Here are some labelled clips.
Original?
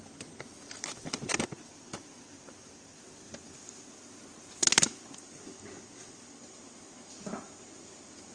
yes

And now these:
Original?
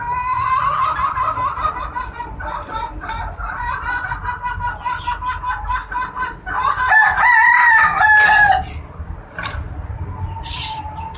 yes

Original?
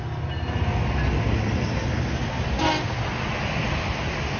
yes